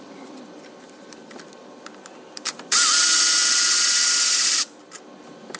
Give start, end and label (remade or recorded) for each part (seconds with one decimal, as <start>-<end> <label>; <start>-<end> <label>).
0.0-5.6 recorded